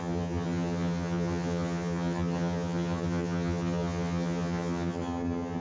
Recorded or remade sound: remade